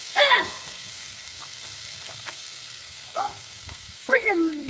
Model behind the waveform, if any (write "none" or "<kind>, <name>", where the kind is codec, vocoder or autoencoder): codec, SNAC